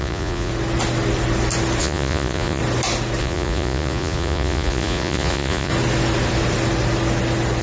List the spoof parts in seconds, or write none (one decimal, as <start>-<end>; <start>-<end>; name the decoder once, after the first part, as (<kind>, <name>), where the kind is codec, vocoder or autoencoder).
0.0-0.5 (vocoder, Vocos); 1.8-2.6; 3.2-5.7